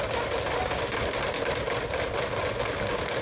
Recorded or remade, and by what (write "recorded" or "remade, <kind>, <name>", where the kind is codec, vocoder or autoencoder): recorded